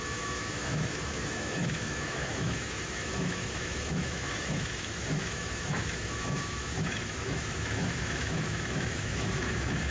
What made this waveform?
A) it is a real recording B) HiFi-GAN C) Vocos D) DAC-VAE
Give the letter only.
D